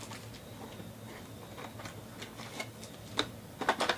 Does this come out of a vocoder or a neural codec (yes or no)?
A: no